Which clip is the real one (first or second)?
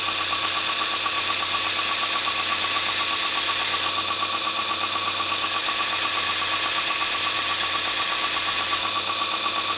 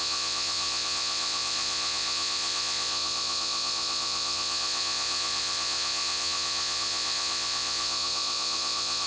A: first